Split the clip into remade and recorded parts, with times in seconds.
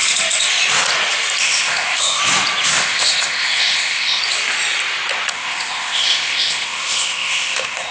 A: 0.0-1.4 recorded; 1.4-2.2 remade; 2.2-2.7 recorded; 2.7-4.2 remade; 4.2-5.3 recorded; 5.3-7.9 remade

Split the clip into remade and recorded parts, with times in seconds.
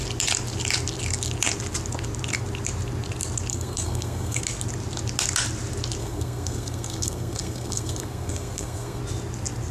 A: 0.0-3.5 recorded; 3.5-4.4 remade; 4.4-6.0 recorded; 6.0-9.0 remade; 9.0-9.7 recorded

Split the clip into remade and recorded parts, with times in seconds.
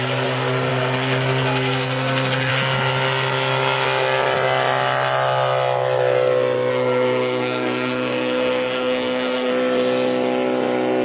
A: 0.0-0.7 recorded; 0.7-2.5 remade; 2.5-6.7 recorded; 6.7-9.5 remade; 9.5-11.0 recorded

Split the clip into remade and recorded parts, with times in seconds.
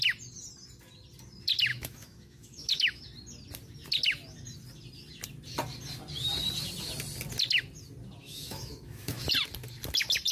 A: 0.0-1.7 recorded; 1.7-3.0 remade; 3.0-8.2 recorded; 8.2-9.3 remade; 9.3-10.3 recorded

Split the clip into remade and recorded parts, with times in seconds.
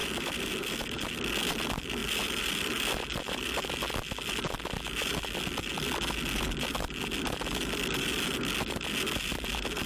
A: 0.0-1.2 remade; 1.2-9.9 recorded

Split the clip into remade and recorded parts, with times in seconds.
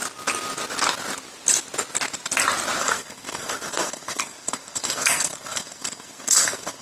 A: 0.0-2.8 recorded; 2.8-6.8 remade